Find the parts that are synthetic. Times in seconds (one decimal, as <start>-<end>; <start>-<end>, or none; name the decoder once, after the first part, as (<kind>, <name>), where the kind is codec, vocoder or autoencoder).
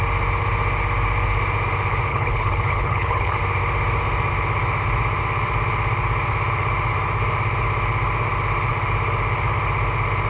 2.1-3.4 (codec, HILCodec)